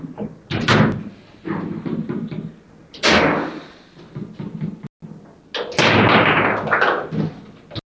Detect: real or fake real